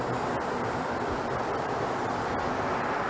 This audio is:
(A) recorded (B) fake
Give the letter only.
A